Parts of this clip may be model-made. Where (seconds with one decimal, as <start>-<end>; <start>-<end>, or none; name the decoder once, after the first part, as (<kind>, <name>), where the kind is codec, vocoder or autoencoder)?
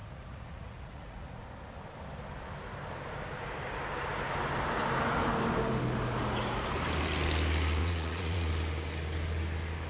0.0-1.4 (vocoder, Vocos); 7.8-8.5